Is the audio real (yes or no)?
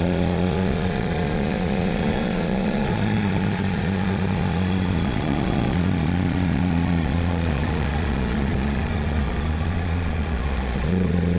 no